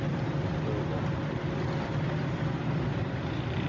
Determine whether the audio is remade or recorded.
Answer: remade